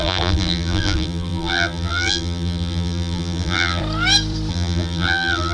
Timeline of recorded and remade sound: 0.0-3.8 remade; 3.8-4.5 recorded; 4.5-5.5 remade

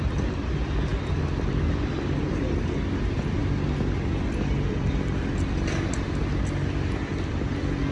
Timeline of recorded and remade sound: 0.0-7.9 recorded